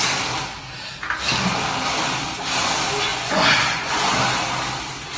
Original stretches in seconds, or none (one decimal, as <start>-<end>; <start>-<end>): 0.0-3.1; 4.1-5.2